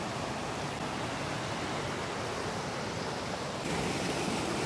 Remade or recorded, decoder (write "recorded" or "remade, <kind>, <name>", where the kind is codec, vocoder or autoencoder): recorded